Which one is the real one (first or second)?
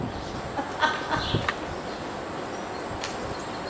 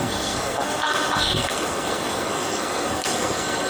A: first